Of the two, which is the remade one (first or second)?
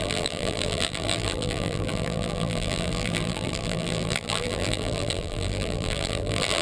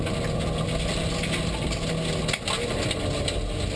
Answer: first